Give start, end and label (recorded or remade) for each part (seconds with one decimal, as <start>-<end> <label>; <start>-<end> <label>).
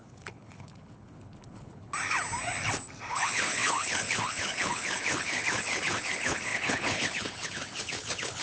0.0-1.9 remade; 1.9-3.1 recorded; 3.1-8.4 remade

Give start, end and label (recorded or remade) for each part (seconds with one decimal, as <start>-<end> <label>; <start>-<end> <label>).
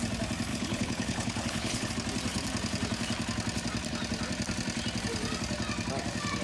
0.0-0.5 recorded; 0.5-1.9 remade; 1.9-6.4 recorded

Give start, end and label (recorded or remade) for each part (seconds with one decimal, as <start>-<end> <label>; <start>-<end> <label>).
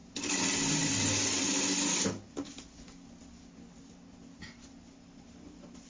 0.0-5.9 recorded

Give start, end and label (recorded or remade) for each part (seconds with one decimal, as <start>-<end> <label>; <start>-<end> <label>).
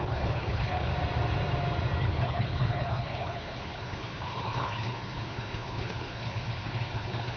0.0-0.9 remade; 0.9-2.0 recorded; 2.0-7.4 remade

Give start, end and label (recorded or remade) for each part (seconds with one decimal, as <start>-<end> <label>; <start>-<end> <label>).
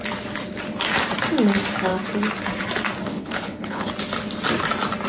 0.0-3.1 recorded; 3.1-3.9 remade; 3.9-5.1 recorded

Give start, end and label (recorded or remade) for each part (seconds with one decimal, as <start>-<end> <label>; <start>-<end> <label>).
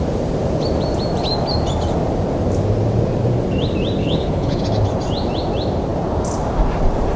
0.0-4.0 recorded; 4.0-4.6 remade; 4.6-7.2 recorded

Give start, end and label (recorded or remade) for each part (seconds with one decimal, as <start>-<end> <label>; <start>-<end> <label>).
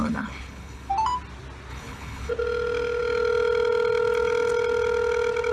0.0-0.9 remade; 0.9-1.7 recorded; 1.7-2.3 remade; 2.3-5.5 recorded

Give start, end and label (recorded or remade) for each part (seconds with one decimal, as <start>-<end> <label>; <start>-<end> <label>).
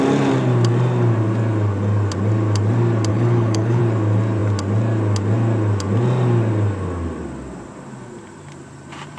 0.0-3.1 recorded; 3.1-3.8 remade; 3.8-9.2 recorded